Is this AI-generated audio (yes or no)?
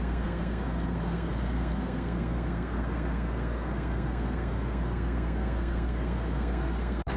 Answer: yes